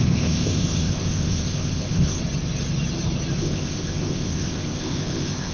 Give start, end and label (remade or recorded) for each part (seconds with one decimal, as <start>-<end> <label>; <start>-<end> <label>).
0.0-2.2 remade; 2.2-3.4 recorded; 3.4-5.5 remade